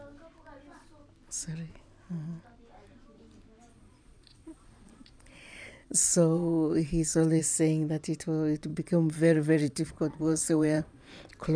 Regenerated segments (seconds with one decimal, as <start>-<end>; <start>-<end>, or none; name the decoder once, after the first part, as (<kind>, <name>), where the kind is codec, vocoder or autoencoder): 3.7-7.4 (vocoder, Vocos); 8.7-11.1